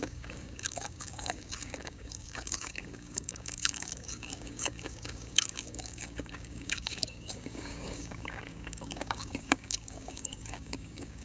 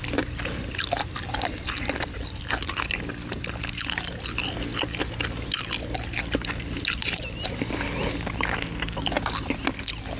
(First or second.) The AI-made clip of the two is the first